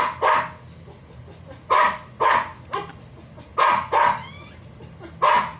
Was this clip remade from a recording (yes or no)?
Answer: no